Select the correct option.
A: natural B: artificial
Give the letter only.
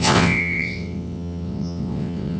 B